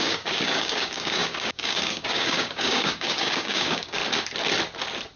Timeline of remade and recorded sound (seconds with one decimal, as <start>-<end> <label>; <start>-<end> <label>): 0.0-4.0 remade; 4.0-5.2 recorded